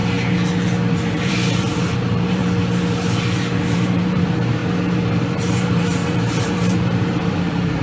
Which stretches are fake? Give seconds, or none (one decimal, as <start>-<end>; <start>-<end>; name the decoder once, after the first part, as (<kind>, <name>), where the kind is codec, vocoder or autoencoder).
0.9-2.4 (vocoder, BigVGAN v2); 3.7-4.6; 5.4-7.8